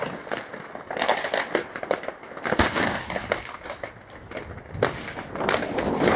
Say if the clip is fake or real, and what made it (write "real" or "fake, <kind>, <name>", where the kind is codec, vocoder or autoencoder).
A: real